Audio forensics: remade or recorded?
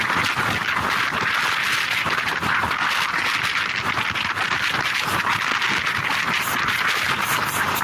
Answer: recorded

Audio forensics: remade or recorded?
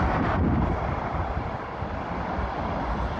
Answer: recorded